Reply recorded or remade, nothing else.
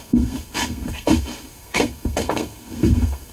remade